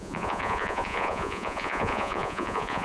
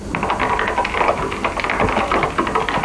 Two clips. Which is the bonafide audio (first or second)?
second